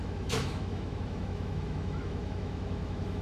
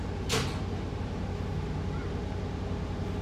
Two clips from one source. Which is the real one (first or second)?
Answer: second